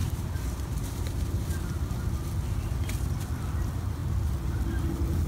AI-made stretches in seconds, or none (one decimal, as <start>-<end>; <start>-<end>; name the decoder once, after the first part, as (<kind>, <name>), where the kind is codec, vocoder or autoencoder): 0.0-1.0 (vocoder, BigVGAN v2)